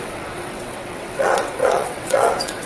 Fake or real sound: fake